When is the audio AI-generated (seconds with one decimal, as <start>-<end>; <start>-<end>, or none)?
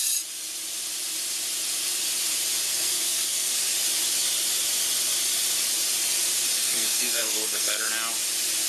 2.7-3.5; 6.6-7.9